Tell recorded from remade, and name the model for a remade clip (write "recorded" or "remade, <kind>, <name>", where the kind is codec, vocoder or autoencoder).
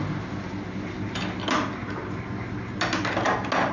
recorded